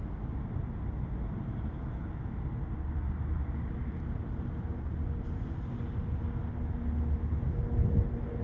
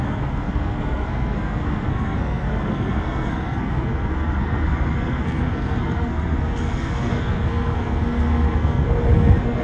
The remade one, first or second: second